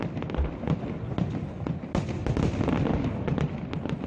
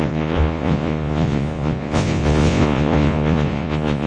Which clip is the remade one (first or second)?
second